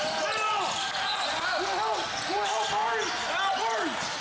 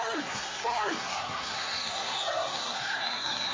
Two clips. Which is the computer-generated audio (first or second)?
second